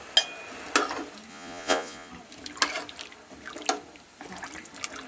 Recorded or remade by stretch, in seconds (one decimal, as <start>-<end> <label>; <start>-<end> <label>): 0.0-1.3 recorded; 1.3-2.1 remade; 2.1-5.1 recorded